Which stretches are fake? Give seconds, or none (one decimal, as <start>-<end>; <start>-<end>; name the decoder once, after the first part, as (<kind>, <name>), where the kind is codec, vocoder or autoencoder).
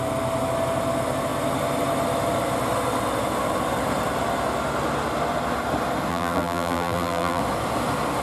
6.1-7.4 (vocoder, BigVGAN v2)